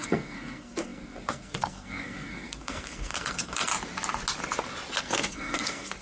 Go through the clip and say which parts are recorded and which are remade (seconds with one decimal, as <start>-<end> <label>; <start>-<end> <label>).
0.0-3.7 remade; 3.7-5.0 recorded; 5.0-6.0 remade

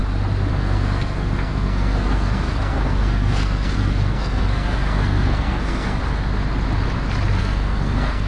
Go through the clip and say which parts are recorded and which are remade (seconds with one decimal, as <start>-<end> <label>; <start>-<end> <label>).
0.0-0.5 recorded; 0.5-6.0 remade; 6.0-7.4 recorded; 7.4-8.3 remade

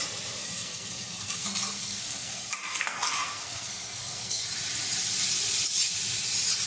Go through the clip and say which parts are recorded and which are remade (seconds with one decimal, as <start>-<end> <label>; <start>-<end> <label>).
0.0-0.4 recorded; 0.4-4.4 remade; 4.4-6.7 recorded

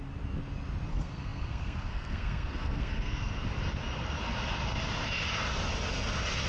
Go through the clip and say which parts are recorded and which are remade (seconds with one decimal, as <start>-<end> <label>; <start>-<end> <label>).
0.0-0.9 recorded; 0.9-3.3 remade; 3.3-6.5 recorded

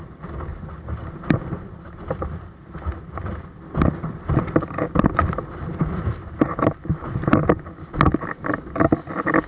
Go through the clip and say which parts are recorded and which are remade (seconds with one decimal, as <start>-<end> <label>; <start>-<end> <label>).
0.0-9.5 recorded